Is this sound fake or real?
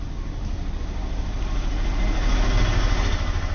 real